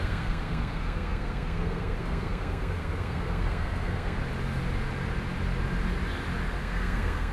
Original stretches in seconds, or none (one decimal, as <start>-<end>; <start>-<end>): 4.2-6.6